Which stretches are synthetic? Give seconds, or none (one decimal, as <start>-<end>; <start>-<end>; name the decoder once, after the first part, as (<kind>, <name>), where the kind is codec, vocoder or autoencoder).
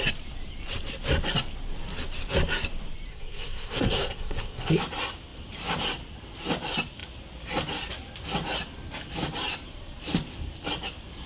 3.1-4.8 (codec, SNAC)